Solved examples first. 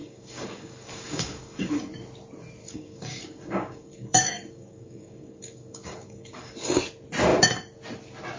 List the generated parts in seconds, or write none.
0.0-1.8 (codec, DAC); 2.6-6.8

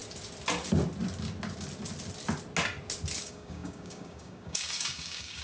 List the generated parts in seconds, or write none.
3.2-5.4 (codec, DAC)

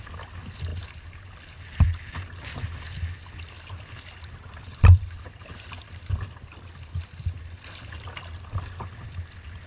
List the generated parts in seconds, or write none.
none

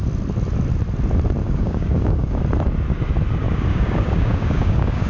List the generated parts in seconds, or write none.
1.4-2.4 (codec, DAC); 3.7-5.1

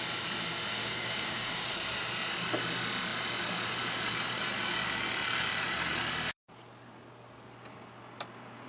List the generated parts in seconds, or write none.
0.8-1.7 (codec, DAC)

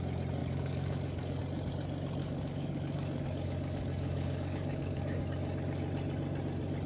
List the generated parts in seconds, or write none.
0.4-1.4 (codec, DAC); 2.2-5.2